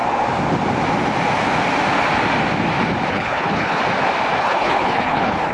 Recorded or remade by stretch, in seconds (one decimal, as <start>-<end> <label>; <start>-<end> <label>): 0.0-3.1 recorded; 3.1-3.8 remade; 3.8-4.4 recorded; 4.4-5.5 remade